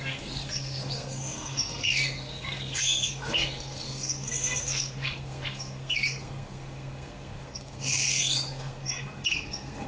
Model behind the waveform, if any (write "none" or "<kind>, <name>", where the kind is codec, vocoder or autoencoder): codec, SNAC